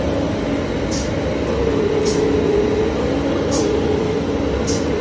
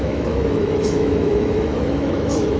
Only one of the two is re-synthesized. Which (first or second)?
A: second